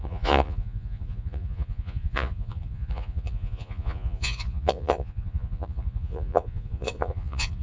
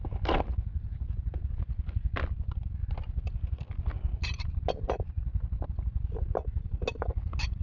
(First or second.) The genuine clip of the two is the second